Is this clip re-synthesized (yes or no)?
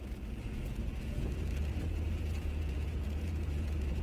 yes